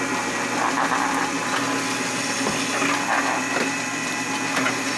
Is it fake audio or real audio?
real